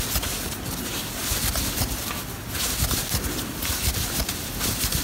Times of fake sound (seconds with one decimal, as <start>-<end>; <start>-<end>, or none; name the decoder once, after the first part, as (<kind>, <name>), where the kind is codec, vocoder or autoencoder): none